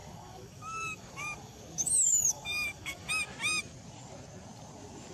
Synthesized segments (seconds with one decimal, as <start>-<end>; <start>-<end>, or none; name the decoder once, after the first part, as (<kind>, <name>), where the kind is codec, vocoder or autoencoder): 0.0-3.1 (codec, DAC)